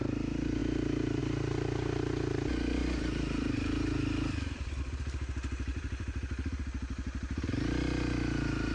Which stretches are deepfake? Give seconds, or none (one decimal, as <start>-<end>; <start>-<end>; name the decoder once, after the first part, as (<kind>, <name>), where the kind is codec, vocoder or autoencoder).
2.8-4.8 (vocoder, BigVGAN v2); 5.7-6.2